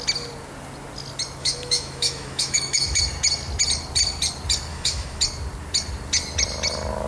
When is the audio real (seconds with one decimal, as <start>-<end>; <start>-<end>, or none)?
0.0-1.4; 3.0-4.7; 5.2-7.1